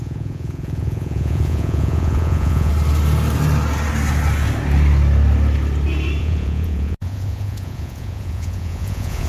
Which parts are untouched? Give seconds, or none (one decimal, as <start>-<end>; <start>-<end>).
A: 2.7-6.2

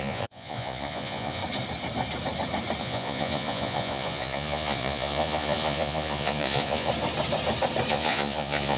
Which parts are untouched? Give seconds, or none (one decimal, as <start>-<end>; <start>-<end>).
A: 1.4-2.8; 6.9-7.9